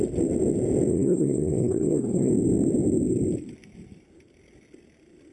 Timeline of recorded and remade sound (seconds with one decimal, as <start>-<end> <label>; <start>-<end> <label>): 0.0-0.9 recorded; 0.9-2.3 remade; 2.3-5.3 recorded